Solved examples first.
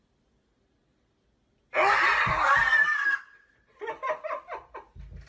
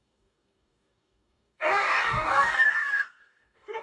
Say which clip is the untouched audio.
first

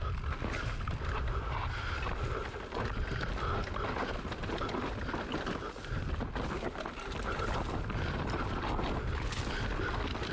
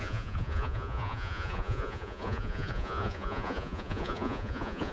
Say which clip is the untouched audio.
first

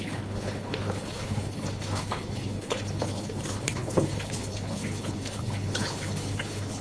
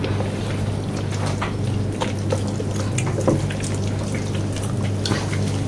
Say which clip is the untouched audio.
second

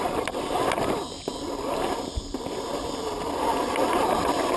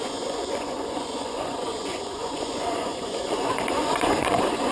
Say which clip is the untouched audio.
first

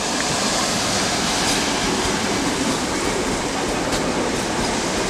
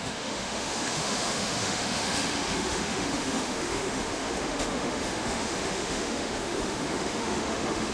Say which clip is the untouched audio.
first